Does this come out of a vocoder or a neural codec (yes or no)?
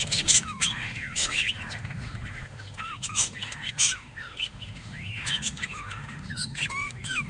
yes